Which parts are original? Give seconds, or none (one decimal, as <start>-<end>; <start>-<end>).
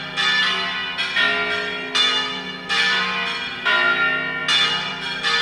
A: 0.0-5.4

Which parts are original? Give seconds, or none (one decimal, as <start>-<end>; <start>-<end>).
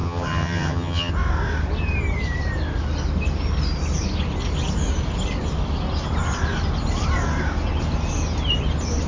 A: 1.1-9.1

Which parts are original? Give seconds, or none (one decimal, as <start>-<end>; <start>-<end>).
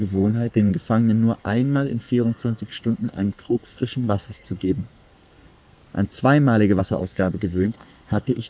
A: 0.7-1.4; 5.8-6.8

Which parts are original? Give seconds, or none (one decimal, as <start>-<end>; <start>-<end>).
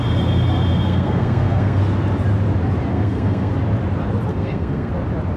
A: 0.0-0.8; 1.8-2.9; 3.5-4.3; 4.9-5.4